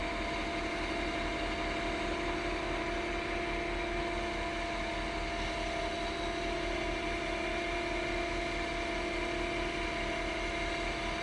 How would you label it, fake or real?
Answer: real